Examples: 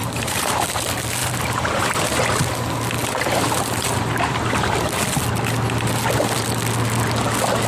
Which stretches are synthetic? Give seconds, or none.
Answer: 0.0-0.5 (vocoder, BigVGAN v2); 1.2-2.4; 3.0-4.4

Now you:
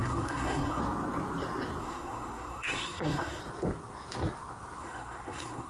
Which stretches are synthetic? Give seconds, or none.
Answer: 0.0-0.8 (codec, SNAC); 1.8-3.4; 4.8-5.7